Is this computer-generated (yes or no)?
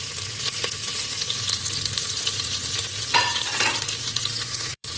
yes